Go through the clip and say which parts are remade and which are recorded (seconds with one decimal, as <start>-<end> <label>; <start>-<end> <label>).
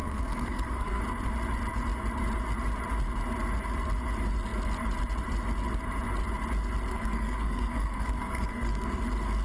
0.0-1.0 remade; 1.0-6.9 recorded; 6.9-9.0 remade; 9.0-9.4 recorded